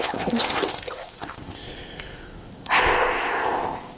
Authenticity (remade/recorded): remade